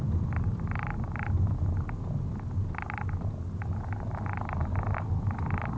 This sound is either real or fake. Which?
real